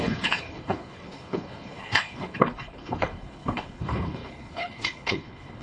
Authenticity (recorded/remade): remade